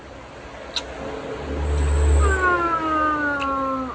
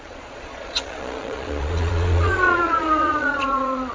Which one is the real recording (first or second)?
first